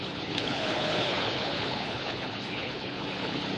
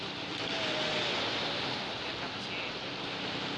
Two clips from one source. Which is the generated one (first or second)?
first